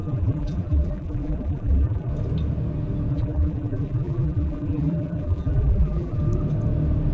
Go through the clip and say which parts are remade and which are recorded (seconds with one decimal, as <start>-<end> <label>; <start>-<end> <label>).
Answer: 0.0-2.1 remade; 2.1-3.1 recorded; 3.1-6.2 remade; 6.2-7.1 recorded